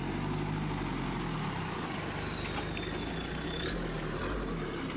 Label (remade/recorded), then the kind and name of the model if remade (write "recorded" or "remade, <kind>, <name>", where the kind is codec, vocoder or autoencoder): recorded